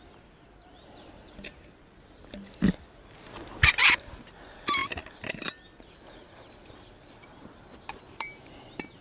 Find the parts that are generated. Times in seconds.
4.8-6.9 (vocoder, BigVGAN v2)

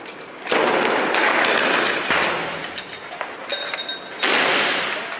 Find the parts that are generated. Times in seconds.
none

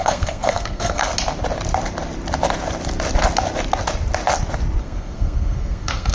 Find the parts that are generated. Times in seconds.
0.0-1.1 (codec, SNAC); 4.8-6.1

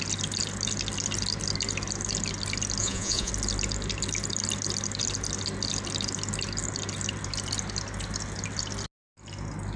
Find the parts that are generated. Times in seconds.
2.8-3.3 (vocoder, Vocos)

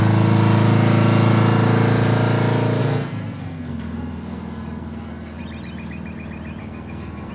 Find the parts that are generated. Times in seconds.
2.8-5.4 (codec, SNAC); 6.6-7.3

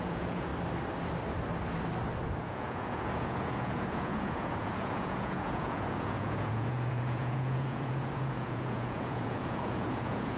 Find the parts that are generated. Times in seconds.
0.0-0.5 (vocoder, Vocos); 2.4-10.4